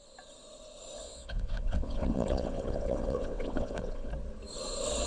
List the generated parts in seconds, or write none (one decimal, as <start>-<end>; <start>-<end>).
1.0-4.1

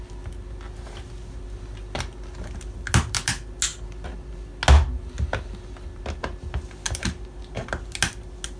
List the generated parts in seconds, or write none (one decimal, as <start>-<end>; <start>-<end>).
none

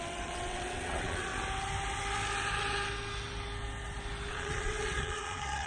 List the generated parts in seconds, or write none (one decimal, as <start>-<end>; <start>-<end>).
0.0-1.3; 4.3-5.7

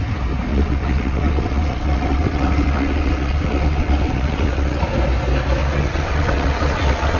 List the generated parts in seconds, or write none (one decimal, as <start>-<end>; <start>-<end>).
0.5-4.8; 5.6-7.2

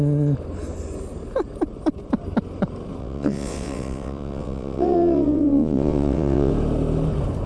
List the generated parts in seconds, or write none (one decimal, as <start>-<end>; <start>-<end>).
3.0-6.5

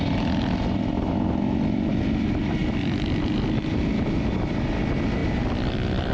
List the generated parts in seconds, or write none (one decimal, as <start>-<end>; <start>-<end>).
none

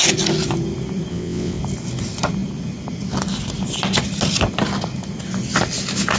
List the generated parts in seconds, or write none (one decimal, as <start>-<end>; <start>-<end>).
1.1-1.6